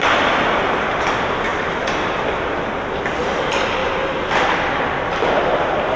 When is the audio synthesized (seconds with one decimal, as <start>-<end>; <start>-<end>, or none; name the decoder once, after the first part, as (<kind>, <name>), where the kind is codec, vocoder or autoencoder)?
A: 0.0-6.0 (vocoder, BigVGAN v2)